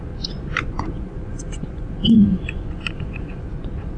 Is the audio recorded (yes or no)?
no